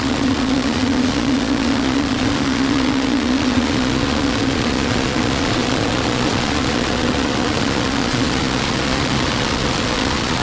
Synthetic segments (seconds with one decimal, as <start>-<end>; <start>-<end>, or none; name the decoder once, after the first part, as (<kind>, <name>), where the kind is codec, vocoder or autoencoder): 0.0-10.4 (vocoder, Vocos)